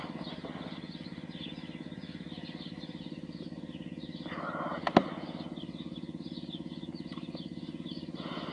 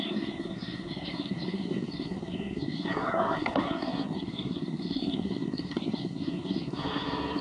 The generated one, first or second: second